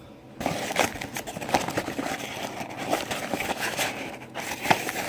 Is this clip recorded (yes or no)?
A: no